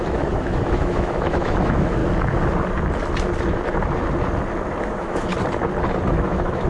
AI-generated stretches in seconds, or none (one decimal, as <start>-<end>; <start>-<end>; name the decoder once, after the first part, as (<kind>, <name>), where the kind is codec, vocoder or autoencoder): 0.0-2.0 (autoencoder, DAC-VAE); 4.8-5.3; 6.1-6.7